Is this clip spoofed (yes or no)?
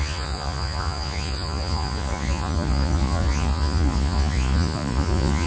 yes